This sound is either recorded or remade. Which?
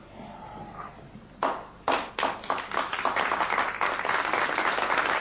recorded